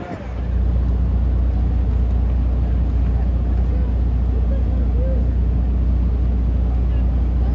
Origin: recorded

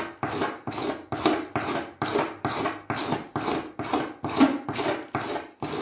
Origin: recorded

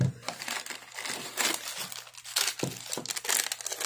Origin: recorded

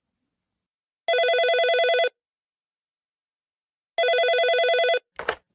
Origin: recorded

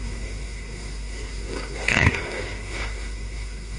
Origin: remade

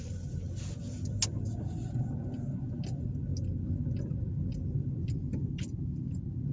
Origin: recorded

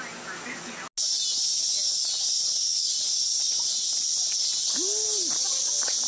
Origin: recorded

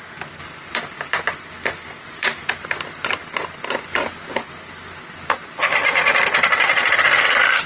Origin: recorded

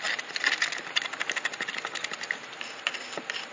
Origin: recorded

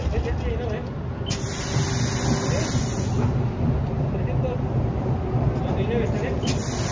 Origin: recorded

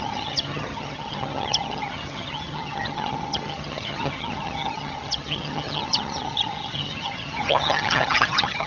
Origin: remade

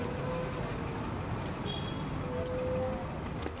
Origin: recorded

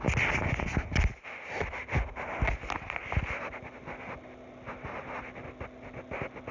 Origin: recorded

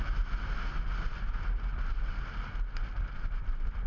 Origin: recorded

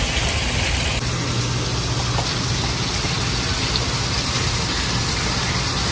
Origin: recorded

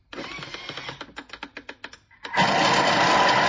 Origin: recorded